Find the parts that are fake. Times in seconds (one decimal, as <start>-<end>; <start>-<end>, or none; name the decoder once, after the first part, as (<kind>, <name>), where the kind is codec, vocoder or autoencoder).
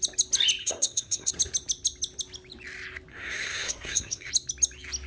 0.6-1.3 (codec, SNAC); 3.1-4.3